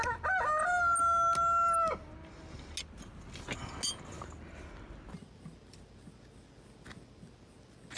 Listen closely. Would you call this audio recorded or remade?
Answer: recorded